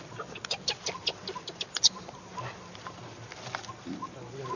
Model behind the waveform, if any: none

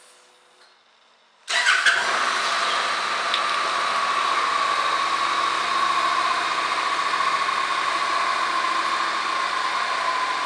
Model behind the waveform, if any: none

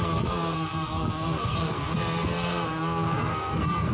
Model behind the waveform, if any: codec, SNAC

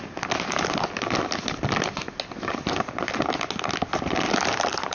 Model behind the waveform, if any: none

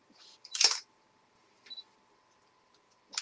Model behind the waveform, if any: none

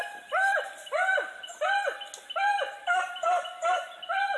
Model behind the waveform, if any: none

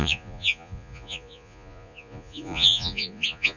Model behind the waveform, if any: vocoder, Vocos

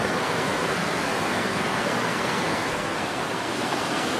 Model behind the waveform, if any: codec, SNAC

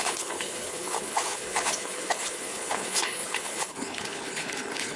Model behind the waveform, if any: codec, HILCodec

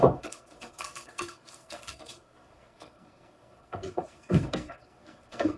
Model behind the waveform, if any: codec, SNAC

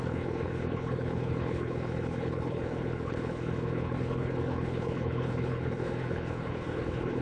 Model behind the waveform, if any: codec, HILCodec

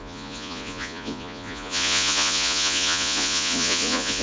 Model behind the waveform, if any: vocoder, Vocos